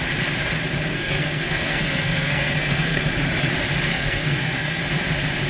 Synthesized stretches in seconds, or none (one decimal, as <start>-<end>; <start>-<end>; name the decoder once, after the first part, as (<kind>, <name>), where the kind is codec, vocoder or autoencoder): 0.9-3.0 (codec, SNAC); 3.9-4.8